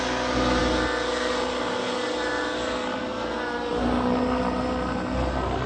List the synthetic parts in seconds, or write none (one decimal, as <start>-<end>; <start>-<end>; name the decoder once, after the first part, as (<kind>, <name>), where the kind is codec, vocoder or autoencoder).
0.0-3.1 (vocoder, BigVGAN v2); 3.8-5.7